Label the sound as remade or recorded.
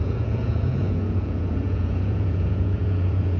remade